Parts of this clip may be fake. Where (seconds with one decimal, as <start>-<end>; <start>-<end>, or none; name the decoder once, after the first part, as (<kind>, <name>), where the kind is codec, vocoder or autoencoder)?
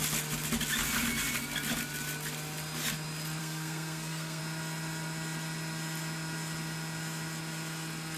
3.4-4.4 (codec, SNAC)